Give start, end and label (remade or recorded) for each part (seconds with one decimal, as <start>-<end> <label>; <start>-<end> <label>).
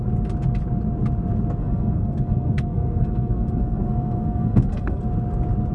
0.0-1.6 recorded; 1.6-5.0 remade; 5.0-5.7 recorded